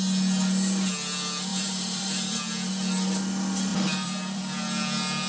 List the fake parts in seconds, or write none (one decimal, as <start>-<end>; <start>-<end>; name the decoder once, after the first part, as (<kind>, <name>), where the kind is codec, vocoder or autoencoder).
1.5-2.4 (vocoder, BigVGAN v2); 3.7-4.4